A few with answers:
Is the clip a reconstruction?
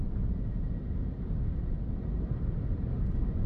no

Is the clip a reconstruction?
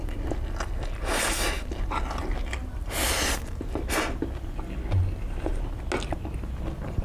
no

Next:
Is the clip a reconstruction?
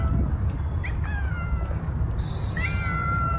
no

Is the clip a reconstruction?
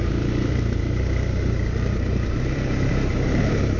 yes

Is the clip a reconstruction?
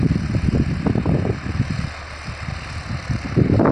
no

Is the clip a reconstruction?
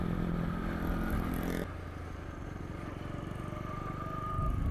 no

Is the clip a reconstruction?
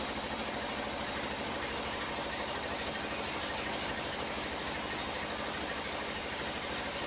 no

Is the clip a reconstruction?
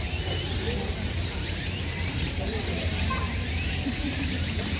yes